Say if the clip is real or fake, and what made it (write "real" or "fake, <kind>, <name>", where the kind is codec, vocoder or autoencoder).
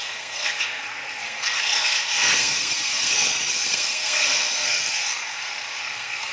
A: fake, codec, SNAC